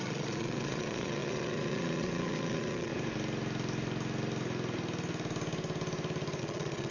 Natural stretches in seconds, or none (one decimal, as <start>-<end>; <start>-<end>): 2.9-6.4

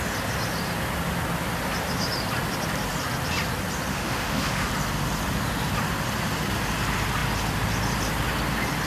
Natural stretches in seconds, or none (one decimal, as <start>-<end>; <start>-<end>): 0.0-3.9; 4.7-8.9

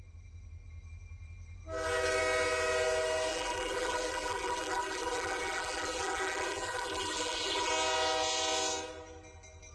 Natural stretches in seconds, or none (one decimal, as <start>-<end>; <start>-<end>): 0.0-3.3; 7.7-9.7

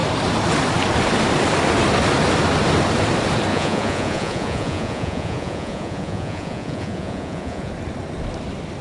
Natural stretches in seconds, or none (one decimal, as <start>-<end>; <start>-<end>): 0.0-3.5; 7.7-8.8

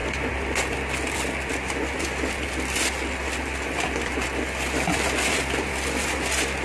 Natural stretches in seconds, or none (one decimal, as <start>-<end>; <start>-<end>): 0.0-6.6